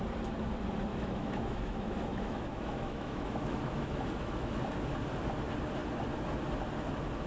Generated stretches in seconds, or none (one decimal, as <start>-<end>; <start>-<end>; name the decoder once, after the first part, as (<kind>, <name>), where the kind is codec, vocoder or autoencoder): 0.9-4.6 (autoencoder, DAC-VAE)